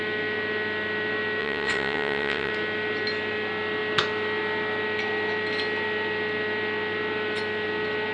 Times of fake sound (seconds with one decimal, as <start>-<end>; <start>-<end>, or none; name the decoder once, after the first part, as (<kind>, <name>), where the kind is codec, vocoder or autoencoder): 1.4-2.5 (vocoder, WaveNeXt)